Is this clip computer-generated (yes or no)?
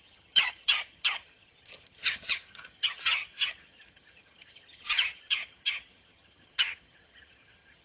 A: yes